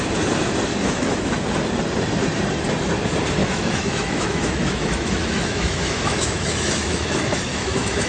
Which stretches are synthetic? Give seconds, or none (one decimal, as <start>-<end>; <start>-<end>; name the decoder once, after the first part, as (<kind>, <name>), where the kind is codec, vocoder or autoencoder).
0.7-1.3 (autoencoder, DAC-VAE); 3.4-8.1